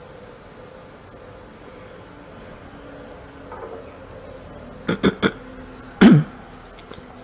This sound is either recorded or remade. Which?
recorded